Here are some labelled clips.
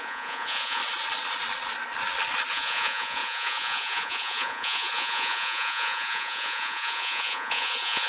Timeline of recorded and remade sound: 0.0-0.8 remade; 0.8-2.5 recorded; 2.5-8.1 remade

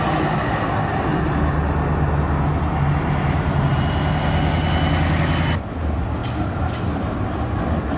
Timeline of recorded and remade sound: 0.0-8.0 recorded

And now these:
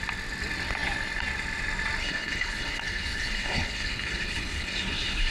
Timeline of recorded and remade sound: 0.0-2.0 recorded; 2.0-5.3 remade